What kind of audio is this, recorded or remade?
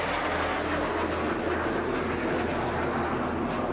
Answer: recorded